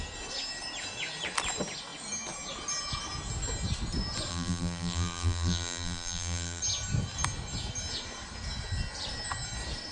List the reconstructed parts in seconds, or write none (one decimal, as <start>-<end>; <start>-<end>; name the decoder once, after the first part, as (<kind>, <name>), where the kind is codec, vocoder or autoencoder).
4.3-6.6 (vocoder, BigVGAN v2)